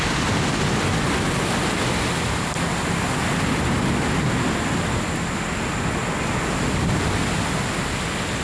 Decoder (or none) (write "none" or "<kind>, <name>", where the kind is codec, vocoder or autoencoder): none